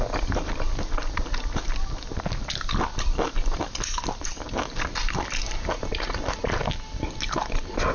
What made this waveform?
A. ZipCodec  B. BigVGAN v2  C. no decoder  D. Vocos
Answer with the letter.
C